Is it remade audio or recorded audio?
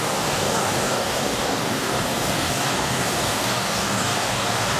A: remade